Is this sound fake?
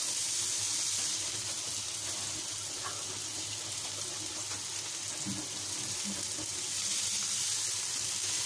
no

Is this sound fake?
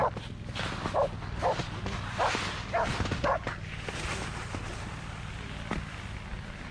no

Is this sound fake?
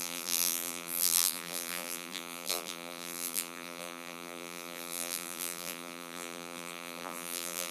yes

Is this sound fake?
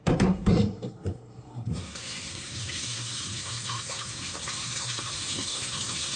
yes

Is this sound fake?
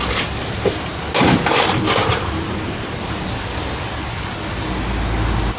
no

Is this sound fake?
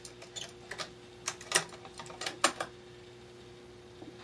no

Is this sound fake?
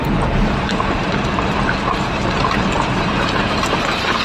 no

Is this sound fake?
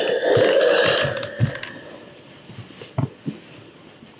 no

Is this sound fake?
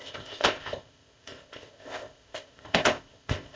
yes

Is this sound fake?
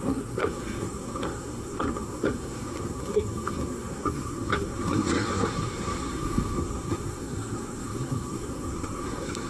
yes